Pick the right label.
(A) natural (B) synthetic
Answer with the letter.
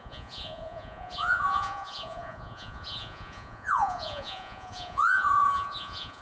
B